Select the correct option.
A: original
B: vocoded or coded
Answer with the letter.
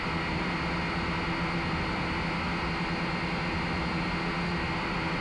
A